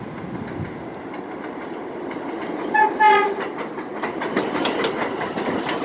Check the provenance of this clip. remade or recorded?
recorded